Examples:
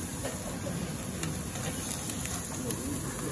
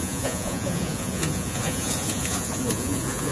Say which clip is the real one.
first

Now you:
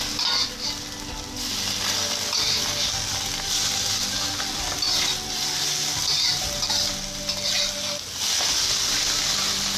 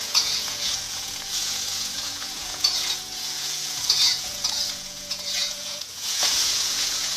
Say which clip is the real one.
first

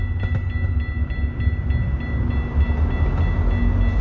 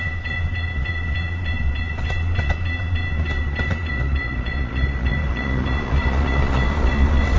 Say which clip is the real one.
first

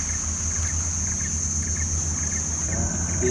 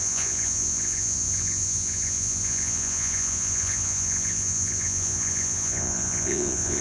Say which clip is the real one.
first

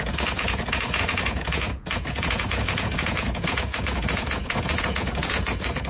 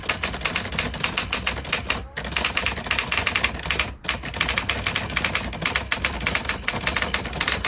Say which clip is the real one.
second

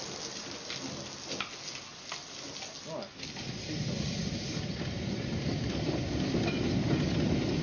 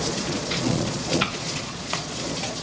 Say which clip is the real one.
first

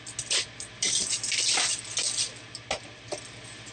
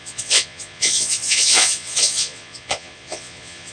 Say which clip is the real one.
first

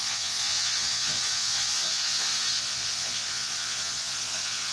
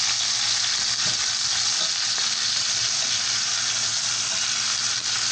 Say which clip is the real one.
second